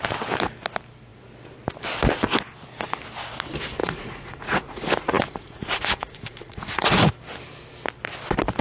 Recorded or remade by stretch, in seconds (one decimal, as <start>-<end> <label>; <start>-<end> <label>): 0.0-3.8 recorded; 3.8-7.1 remade; 7.1-8.6 recorded